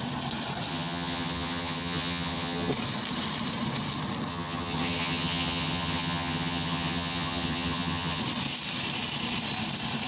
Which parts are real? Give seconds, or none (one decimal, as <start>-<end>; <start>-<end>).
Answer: 0.0-0.7; 2.7-4.3; 8.2-10.1